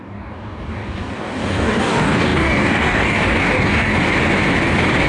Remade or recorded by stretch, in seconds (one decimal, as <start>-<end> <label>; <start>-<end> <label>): 0.0-3.9 remade; 3.9-5.1 recorded